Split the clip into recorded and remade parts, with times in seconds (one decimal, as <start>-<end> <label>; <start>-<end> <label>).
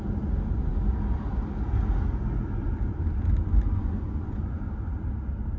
0.0-3.7 recorded; 3.7-4.7 remade; 4.7-5.6 recorded